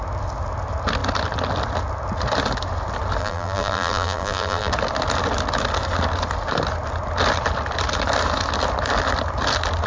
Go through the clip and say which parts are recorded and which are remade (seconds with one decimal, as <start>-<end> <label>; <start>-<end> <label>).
0.0-3.2 recorded; 3.2-4.7 remade; 4.7-9.9 recorded